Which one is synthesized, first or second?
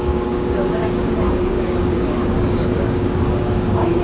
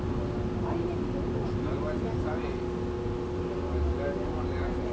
first